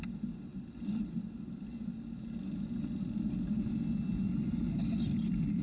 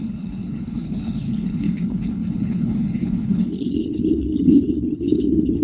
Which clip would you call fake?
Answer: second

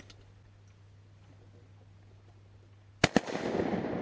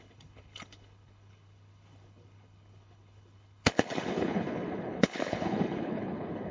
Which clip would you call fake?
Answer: second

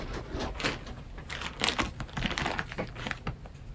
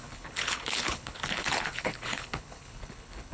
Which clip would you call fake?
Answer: second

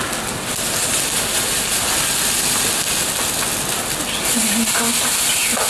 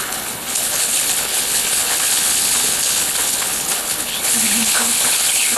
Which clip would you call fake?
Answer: second